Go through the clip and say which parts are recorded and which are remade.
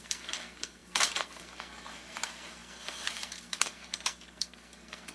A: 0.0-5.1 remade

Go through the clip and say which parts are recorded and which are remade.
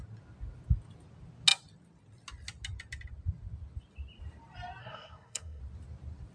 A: 0.0-4.8 recorded; 4.8-5.6 remade; 5.6-6.3 recorded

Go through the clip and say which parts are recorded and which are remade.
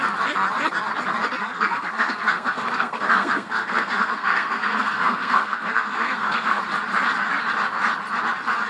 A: 0.0-1.4 recorded; 1.4-6.6 remade; 6.6-8.7 recorded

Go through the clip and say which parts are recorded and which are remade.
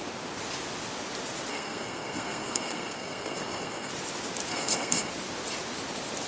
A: 0.0-1.5 recorded; 1.5-3.9 remade; 3.9-4.5 recorded; 4.5-5.1 remade; 5.1-6.3 recorded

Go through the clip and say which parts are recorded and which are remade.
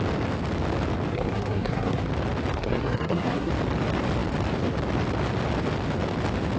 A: 0.0-1.1 recorded; 1.1-2.0 remade; 2.0-2.5 recorded; 2.5-3.5 remade; 3.5-6.6 recorded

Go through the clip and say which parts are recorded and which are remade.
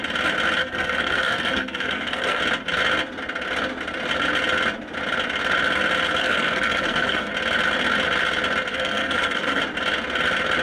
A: 0.0-0.6 recorded; 0.6-2.4 remade; 2.4-6.2 recorded; 6.2-7.3 remade; 7.3-8.7 recorded; 8.7-9.6 remade; 9.6-10.6 recorded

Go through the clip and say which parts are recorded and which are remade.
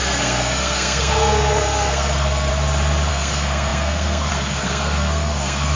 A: 0.0-2.5 remade; 2.5-3.1 recorded; 3.1-5.8 remade